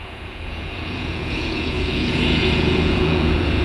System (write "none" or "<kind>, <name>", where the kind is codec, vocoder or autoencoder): vocoder, Vocos